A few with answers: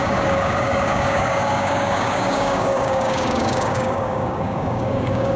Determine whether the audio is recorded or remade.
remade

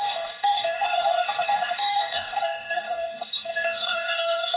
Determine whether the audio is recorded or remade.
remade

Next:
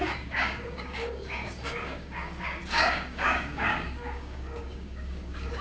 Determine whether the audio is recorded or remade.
remade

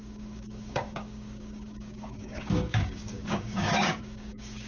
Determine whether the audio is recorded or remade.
remade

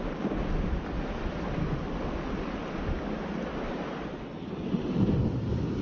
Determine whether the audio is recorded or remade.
recorded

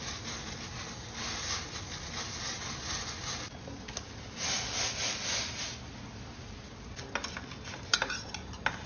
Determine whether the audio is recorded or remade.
recorded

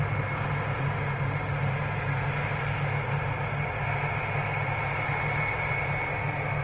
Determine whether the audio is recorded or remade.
recorded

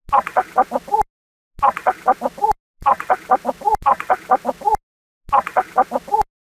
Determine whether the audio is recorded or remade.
recorded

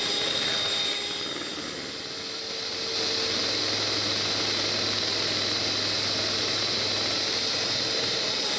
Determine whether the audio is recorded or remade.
recorded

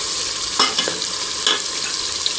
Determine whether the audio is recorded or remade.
recorded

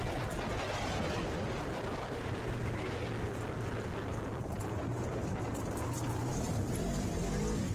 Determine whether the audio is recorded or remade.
recorded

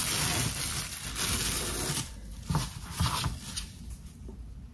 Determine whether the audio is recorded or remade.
recorded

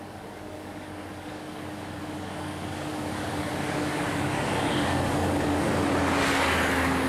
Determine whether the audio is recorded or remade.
remade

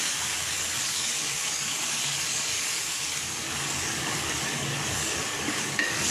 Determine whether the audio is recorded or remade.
remade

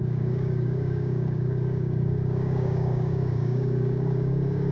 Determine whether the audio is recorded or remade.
remade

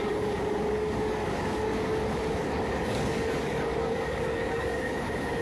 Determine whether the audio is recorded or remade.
remade